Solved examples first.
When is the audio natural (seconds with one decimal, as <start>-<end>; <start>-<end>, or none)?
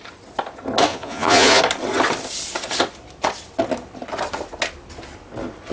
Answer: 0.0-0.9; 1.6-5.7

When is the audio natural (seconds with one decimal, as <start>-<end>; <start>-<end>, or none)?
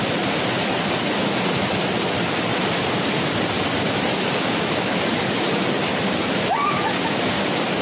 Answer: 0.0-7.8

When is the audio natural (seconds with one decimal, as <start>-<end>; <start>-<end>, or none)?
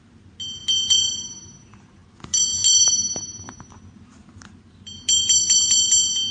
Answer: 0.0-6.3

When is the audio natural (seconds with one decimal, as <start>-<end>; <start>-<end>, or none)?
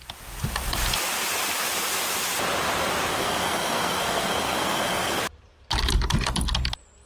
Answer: 0.0-3.1; 5.2-7.1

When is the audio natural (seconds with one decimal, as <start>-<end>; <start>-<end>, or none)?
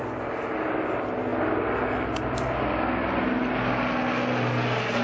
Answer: 0.0-5.0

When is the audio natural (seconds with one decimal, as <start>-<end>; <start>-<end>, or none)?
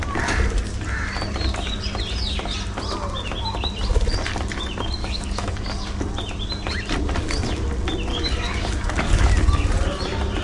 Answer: 0.0-5.0; 6.0-8.1; 9.3-10.4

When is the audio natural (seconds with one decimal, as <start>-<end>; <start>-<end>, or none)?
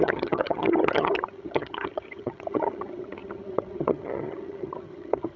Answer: none